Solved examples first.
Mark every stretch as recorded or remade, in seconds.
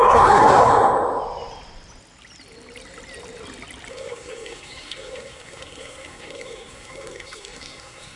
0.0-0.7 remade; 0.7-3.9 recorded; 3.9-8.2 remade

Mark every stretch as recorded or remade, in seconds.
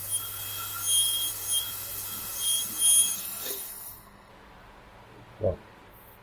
0.0-3.1 recorded; 3.1-4.3 remade; 4.3-6.2 recorded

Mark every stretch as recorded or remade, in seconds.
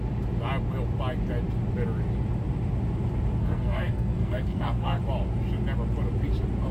0.0-3.4 recorded; 3.4-5.0 remade; 5.0-6.7 recorded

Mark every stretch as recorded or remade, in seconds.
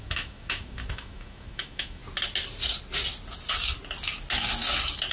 0.0-2.0 remade; 2.0-5.1 recorded